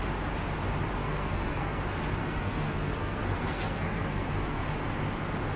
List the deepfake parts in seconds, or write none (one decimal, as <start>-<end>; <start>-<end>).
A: 1.0-1.8; 2.2-4.6